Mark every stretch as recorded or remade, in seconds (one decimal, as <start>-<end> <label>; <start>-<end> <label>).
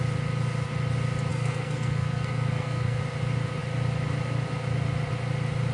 0.0-1.3 recorded; 1.3-3.0 remade; 3.0-5.7 recorded